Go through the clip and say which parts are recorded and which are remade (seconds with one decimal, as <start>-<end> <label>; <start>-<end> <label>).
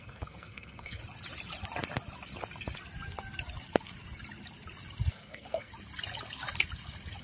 0.0-1.0 remade; 1.0-5.1 recorded; 5.1-5.7 remade; 5.7-7.2 recorded